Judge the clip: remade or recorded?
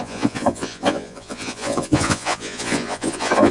remade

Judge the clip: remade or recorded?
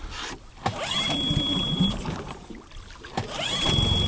recorded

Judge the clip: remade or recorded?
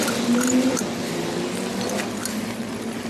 recorded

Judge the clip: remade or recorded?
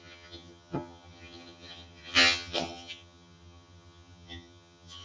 remade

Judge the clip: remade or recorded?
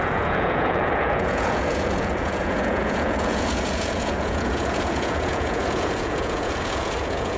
remade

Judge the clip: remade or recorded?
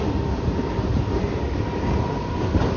recorded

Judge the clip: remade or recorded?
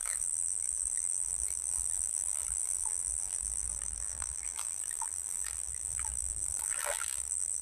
remade